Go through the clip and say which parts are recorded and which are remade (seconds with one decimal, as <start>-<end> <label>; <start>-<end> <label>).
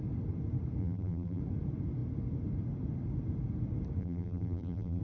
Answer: 0.0-0.8 recorded; 0.8-1.4 remade; 1.4-4.0 recorded; 4.0-5.0 remade